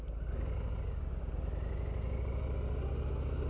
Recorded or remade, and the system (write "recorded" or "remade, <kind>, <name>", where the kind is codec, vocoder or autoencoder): recorded